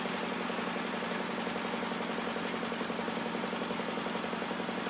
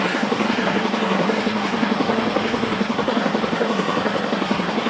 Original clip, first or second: first